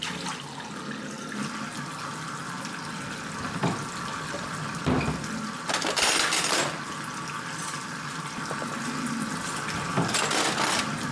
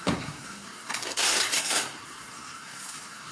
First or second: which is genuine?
first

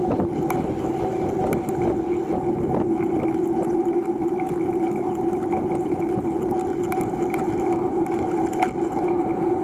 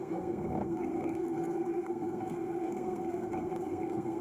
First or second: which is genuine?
first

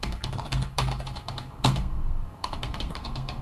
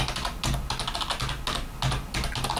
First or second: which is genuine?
second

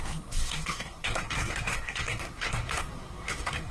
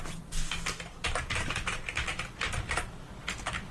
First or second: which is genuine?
second